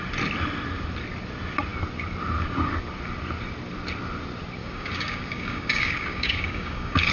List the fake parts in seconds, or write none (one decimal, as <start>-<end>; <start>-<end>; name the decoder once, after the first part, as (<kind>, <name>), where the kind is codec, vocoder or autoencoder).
4.6-7.1 (codec, DAC)